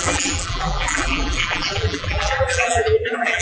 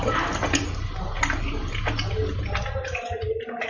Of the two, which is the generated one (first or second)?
first